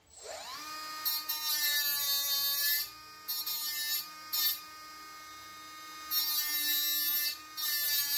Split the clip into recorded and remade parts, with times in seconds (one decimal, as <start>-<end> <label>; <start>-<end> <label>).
0.0-8.2 recorded